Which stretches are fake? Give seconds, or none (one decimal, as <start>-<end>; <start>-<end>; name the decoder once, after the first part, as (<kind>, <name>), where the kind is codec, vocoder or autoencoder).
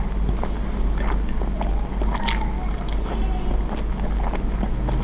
none